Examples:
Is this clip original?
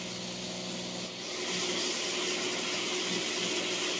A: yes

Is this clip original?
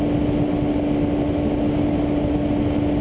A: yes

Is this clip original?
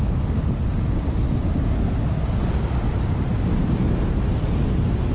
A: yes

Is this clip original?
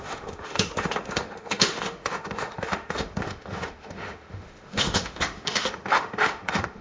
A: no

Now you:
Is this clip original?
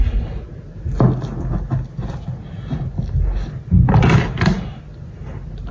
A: yes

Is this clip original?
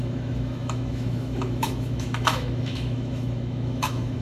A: no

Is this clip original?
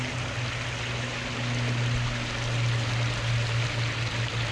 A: yes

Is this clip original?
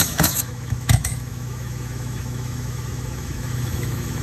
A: no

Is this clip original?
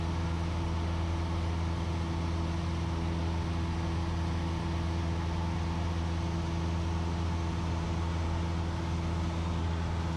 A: yes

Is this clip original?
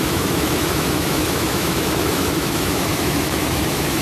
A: no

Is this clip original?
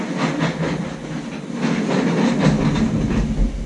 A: yes